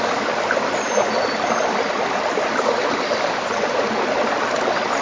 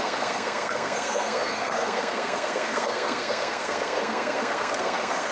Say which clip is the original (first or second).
first